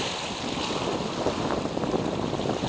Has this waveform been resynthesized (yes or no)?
no